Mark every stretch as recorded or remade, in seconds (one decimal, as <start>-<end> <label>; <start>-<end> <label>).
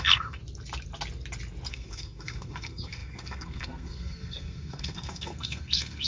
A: 0.0-0.4 remade; 0.4-1.7 recorded; 1.7-6.1 remade